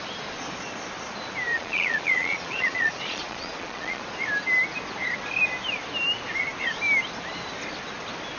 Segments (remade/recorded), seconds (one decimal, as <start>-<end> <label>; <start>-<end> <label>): 0.0-1.5 recorded; 1.5-4.0 remade; 4.0-8.4 recorded